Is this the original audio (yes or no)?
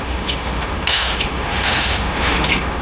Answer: no